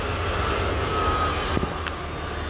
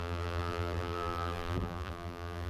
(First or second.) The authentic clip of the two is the first